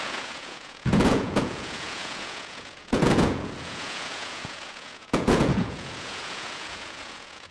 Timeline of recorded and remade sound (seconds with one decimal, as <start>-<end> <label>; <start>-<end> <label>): 0.0-7.5 remade